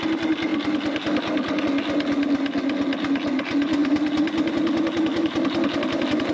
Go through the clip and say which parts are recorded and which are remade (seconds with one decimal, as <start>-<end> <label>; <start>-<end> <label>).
0.0-0.5 recorded; 0.5-1.6 remade; 1.6-3.8 recorded; 3.8-6.3 remade